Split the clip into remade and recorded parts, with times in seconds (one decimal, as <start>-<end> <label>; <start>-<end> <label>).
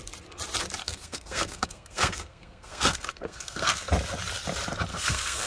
0.0-0.8 recorded; 0.8-3.9 remade; 3.9-4.9 recorded; 4.9-5.5 remade